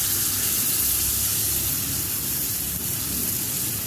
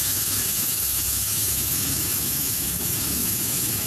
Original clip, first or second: first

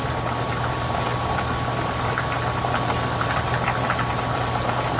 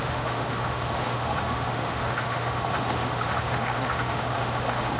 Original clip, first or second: first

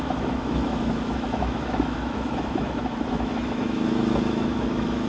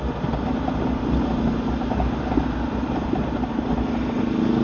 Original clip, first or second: second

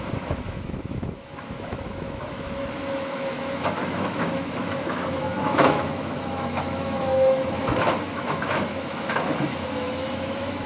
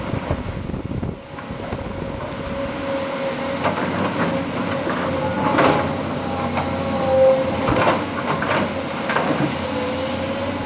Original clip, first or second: second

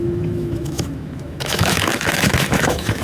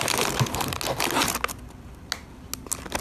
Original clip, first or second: second